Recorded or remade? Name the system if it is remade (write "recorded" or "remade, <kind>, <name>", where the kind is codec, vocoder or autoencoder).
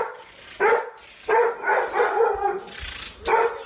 recorded